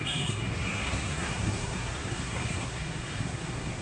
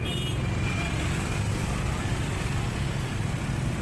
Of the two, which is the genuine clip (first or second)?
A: second